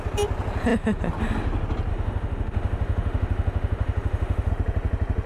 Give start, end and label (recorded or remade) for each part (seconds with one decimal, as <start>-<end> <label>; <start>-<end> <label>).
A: 0.0-1.9 recorded; 1.9-4.5 remade; 4.5-5.3 recorded